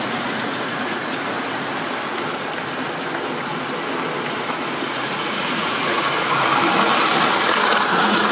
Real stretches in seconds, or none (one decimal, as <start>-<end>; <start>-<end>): 1.7-4.8; 6.5-7.9